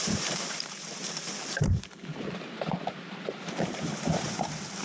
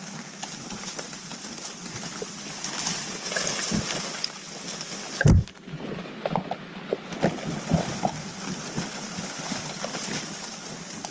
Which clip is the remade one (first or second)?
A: first